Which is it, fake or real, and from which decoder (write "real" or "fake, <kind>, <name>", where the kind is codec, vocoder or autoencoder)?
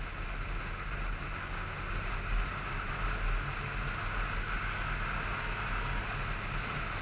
real